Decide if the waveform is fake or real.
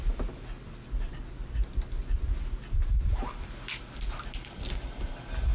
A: real